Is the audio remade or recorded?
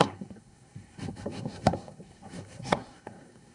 remade